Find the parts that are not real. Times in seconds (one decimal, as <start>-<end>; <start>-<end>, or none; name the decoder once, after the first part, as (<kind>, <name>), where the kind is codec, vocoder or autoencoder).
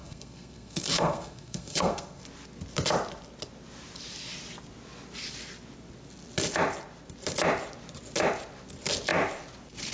0.0-2.2 (codec, SNAC)